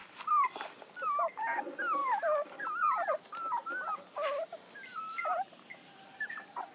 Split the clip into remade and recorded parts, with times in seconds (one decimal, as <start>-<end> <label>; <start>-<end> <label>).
0.0-1.3 remade; 1.3-2.0 recorded; 2.0-2.6 remade; 2.6-4.9 recorded; 4.9-6.7 remade